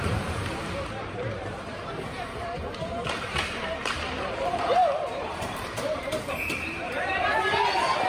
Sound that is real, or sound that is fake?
fake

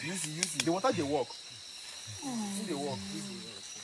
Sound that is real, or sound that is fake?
real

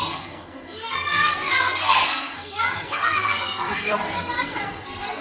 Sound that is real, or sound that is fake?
fake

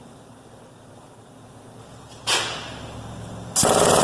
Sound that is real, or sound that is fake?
real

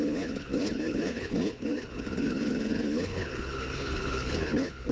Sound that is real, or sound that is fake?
fake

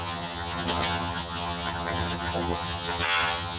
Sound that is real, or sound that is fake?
fake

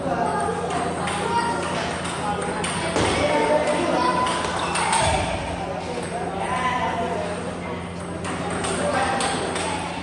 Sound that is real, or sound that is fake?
real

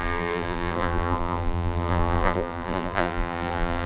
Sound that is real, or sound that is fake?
fake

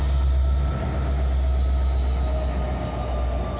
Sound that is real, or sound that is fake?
real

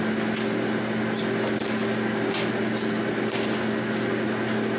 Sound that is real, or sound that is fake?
real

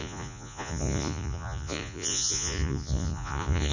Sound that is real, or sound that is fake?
fake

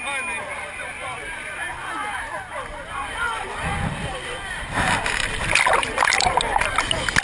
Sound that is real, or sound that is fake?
real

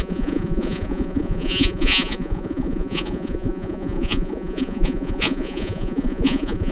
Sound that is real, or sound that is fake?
fake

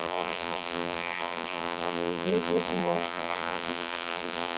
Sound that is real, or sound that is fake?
fake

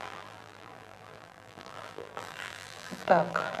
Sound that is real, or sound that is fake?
fake